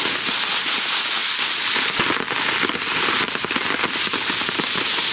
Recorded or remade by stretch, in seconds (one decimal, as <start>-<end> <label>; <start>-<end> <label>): 0.0-5.1 recorded